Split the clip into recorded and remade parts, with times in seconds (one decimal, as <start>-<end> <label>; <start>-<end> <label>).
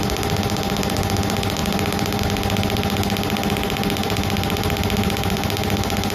0.0-6.1 recorded